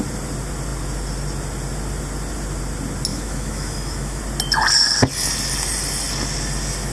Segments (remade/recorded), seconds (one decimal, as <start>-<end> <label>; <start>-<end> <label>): 0.0-3.1 recorded; 3.1-4.2 remade; 4.2-6.9 recorded